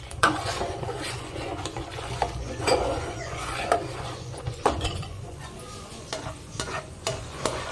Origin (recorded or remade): remade